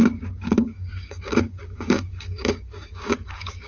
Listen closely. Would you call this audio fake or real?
fake